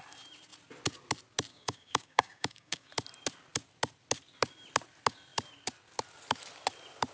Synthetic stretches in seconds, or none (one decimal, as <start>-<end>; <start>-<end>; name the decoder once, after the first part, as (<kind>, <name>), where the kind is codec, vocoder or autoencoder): 1.5-2.9 (codec, DAC)